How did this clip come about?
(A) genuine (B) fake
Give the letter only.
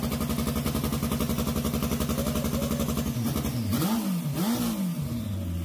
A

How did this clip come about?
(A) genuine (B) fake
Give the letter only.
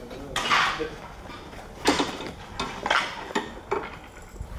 A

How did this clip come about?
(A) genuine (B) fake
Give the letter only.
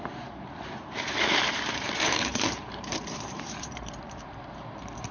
B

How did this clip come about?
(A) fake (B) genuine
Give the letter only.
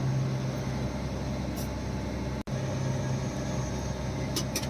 B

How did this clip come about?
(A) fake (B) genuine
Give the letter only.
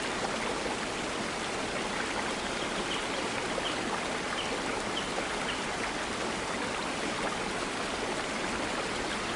B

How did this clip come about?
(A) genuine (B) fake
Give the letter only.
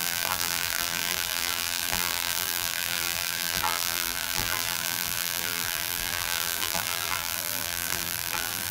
B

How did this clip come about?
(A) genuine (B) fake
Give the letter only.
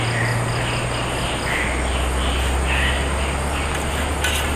A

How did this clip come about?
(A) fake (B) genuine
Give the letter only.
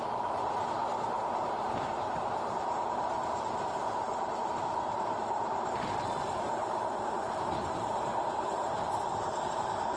A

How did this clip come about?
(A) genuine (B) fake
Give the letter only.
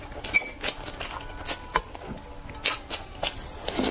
A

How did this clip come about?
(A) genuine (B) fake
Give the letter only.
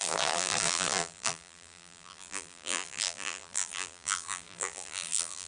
B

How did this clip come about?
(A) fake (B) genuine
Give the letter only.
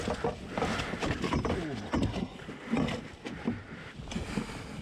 B